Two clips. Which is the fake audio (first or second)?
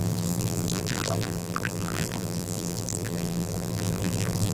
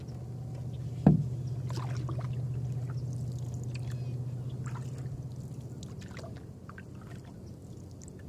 first